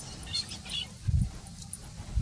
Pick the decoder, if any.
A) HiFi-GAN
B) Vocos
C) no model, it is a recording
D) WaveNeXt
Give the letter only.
C